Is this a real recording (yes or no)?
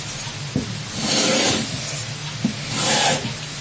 yes